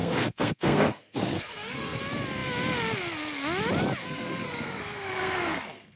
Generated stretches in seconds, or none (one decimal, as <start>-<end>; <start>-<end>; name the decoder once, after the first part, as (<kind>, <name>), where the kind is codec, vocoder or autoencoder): 0.0-2.0 (codec, SNAC); 4.0-6.0